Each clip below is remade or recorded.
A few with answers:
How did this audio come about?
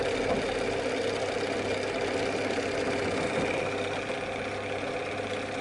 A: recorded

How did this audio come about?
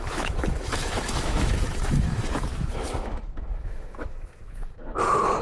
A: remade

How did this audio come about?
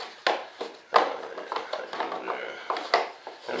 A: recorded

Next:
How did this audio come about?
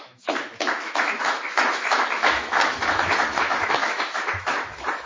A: remade